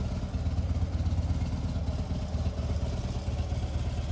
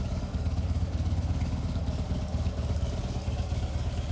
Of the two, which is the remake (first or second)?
second